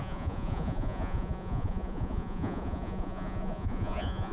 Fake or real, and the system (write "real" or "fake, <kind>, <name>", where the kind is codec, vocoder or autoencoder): fake, vocoder, Vocos